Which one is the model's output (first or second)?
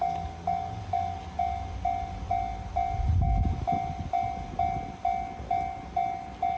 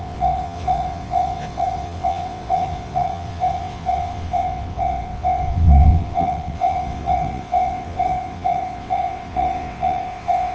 second